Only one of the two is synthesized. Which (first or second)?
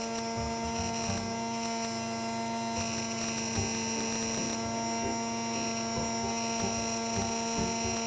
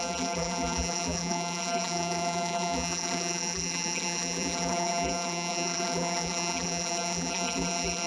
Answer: second